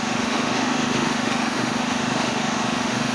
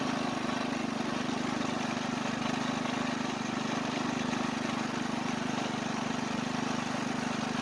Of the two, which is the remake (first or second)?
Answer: first